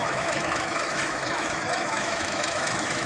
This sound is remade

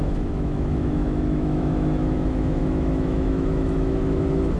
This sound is remade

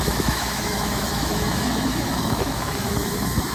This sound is remade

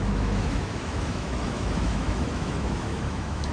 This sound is remade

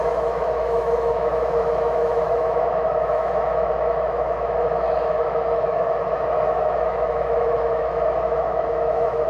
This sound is remade